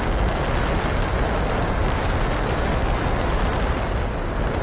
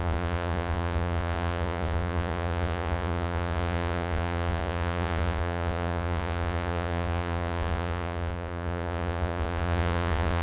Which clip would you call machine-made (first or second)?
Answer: second